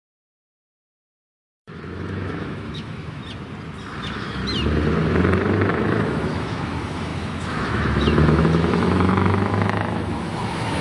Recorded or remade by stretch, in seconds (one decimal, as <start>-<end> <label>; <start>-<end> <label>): 0.0-3.2 remade; 3.2-4.0 recorded; 4.0-4.4 remade; 4.4-5.7 recorded; 5.7-10.8 remade